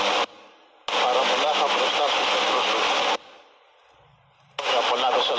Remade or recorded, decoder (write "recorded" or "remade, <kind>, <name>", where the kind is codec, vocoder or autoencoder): recorded